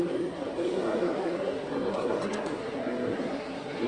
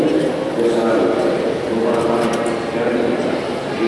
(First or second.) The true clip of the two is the second